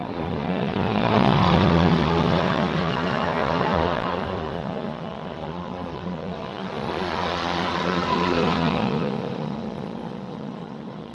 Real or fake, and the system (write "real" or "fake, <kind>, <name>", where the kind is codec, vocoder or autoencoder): fake, vocoder, Vocos